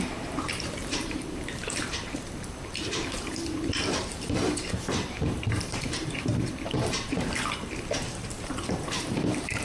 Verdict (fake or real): fake